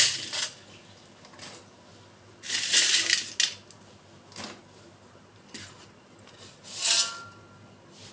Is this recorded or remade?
recorded